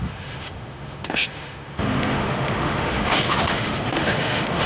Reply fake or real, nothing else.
fake